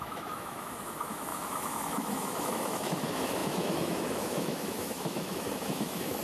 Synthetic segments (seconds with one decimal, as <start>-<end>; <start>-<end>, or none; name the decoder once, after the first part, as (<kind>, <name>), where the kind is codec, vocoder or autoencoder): 0.0-6.2 (autoencoder, DAC-VAE)